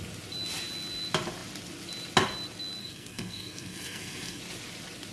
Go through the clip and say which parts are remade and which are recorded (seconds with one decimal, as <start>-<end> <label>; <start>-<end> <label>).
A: 0.0-2.8 recorded; 2.8-4.4 remade; 4.4-5.1 recorded